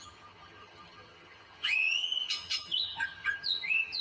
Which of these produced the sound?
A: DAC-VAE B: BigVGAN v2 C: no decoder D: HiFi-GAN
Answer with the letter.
D